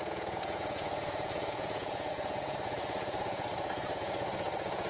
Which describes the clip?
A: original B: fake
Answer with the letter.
B